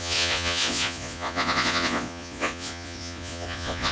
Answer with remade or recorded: remade